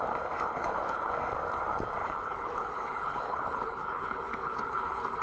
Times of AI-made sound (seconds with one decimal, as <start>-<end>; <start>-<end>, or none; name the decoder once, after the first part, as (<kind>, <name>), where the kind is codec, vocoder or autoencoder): 0.5-1.1 (codec, HILCodec); 2.0-5.2